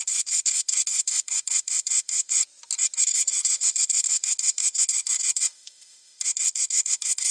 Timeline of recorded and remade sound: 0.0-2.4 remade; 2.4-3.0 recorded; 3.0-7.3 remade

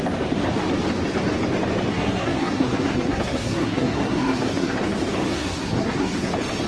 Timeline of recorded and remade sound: 0.0-1.9 recorded; 1.9-4.8 remade; 4.8-5.3 recorded; 5.3-6.3 remade; 6.3-6.7 recorded

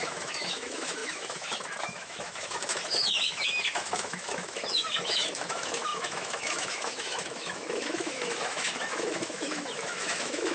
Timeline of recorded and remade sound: 0.0-10.5 remade

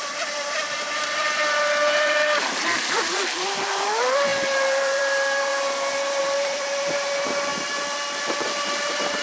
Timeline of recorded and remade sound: 0.0-5.5 remade; 5.5-6.2 recorded; 6.2-9.2 remade